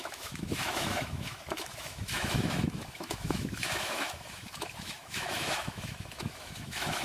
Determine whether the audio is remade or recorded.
remade